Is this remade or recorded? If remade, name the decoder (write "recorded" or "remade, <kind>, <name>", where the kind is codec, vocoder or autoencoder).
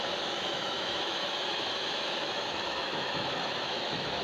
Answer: remade, autoencoder, DAC-VAE